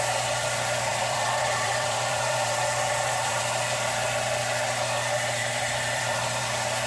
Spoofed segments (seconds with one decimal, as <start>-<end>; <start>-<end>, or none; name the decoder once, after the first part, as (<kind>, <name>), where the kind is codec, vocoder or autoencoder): 0.9-3.4 (vocoder, BigVGAN v2); 5.4-6.4